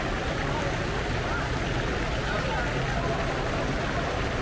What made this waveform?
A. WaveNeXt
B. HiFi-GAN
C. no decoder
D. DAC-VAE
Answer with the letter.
C